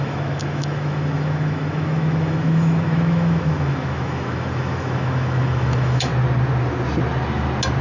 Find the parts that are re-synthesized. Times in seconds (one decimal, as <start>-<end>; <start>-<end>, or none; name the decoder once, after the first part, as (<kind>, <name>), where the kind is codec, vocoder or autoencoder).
0.0-6.1 (autoencoder, DAC-VAE)